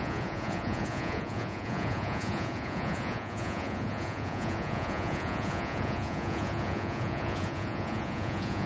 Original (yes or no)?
no